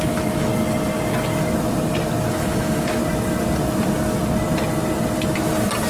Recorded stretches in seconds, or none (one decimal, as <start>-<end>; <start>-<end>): 0.5-2.3; 3.0-5.9